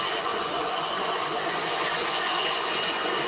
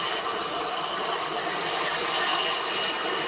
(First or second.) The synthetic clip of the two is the first